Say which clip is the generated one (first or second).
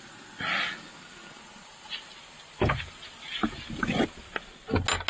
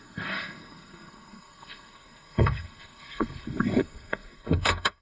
second